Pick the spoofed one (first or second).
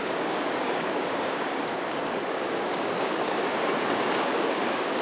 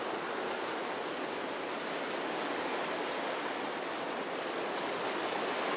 first